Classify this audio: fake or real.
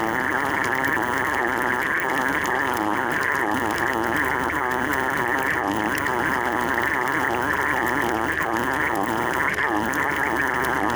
real